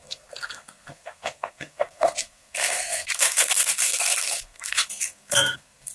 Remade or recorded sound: remade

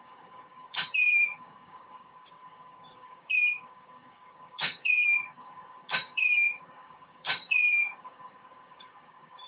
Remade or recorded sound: remade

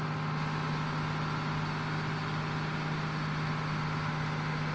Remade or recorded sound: recorded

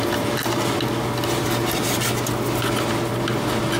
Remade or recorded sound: recorded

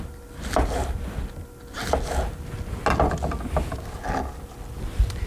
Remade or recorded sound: recorded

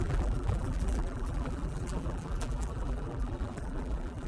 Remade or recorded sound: remade